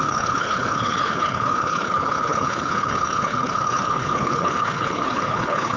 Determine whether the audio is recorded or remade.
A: remade